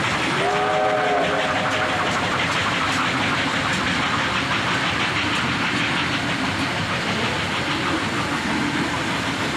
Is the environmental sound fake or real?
real